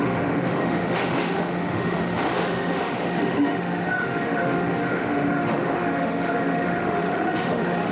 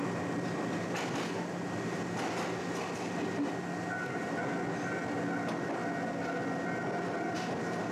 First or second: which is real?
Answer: second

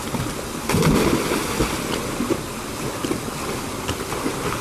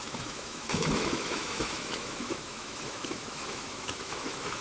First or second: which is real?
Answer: first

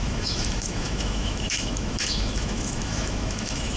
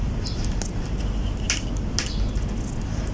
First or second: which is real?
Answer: second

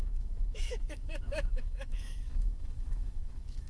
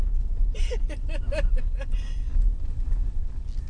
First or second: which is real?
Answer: second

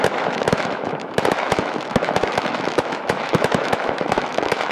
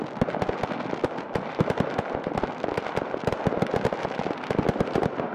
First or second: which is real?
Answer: second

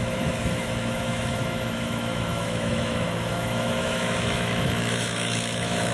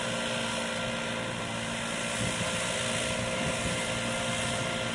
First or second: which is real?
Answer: second